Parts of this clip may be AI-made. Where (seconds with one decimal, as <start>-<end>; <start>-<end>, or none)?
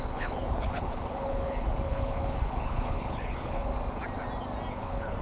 0.0-3.7; 4.7-5.2